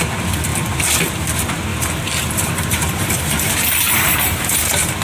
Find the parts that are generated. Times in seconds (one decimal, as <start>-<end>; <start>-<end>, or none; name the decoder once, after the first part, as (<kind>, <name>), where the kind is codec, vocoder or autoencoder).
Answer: 0.5-1.1 (vocoder, BigVGAN v2); 1.7-5.0